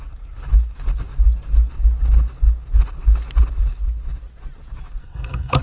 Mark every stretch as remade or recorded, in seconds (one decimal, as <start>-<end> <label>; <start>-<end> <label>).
0.0-5.0 recorded; 5.0-5.6 remade